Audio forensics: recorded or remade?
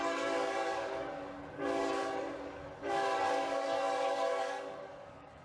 remade